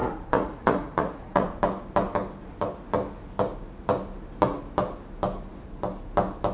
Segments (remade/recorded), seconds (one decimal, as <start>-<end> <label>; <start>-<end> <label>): 0.0-1.6 remade; 1.6-6.5 recorded